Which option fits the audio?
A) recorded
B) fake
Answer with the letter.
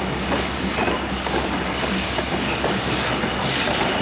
B